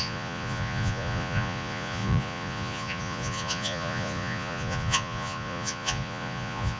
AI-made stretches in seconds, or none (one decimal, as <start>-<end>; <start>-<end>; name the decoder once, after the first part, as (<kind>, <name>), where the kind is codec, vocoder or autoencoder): 0.0-6.8 (vocoder, Vocos)